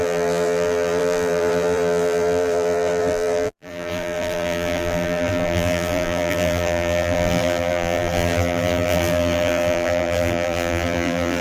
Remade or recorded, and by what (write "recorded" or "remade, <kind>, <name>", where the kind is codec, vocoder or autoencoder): remade, vocoder, BigVGAN v2